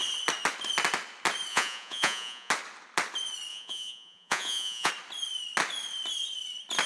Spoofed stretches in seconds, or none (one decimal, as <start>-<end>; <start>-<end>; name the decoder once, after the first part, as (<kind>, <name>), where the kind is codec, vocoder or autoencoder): 1.5-2.5 (vocoder, Vocos); 3.5-4.9